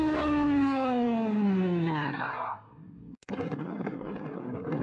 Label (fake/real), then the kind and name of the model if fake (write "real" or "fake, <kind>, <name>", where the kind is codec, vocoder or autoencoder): fake, codec, SNAC